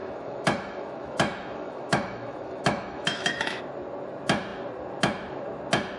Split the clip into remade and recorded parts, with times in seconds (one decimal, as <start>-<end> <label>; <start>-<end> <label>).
0.0-3.6 remade; 3.6-6.0 recorded